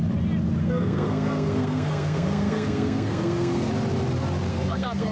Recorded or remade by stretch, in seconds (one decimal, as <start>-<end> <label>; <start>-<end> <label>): 0.0-0.6 recorded; 0.6-3.7 remade; 3.7-4.5 recorded; 4.5-5.1 remade